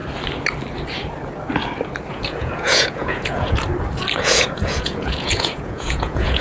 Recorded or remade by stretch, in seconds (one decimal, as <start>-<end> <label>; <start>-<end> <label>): 0.0-2.1 recorded; 2.1-3.6 remade; 3.6-4.2 recorded; 4.2-6.4 remade